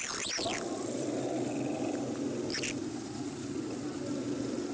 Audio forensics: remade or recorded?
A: recorded